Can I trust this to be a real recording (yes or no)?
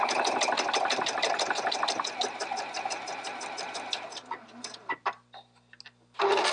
yes